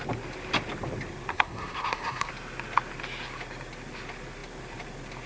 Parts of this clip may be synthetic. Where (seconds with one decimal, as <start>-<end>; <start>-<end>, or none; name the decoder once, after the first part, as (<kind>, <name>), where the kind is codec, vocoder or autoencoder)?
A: 1.3-2.3 (codec, SNAC)